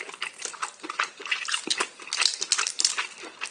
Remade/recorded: recorded